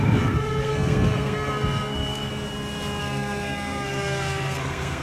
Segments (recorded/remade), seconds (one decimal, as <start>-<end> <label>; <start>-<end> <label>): 0.0-2.3 remade; 2.3-3.0 recorded; 3.0-5.0 remade